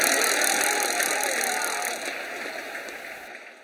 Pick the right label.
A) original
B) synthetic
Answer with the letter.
A